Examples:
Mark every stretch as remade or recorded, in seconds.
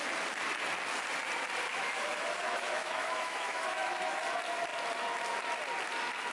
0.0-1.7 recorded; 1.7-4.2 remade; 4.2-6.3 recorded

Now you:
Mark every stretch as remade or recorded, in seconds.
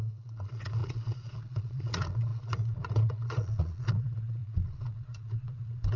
0.0-6.0 remade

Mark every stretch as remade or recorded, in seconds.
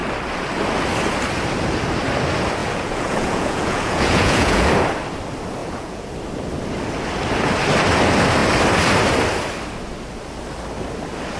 0.0-2.6 recorded; 2.6-4.7 remade; 4.7-5.6 recorded; 5.6-6.1 remade; 6.1-11.4 recorded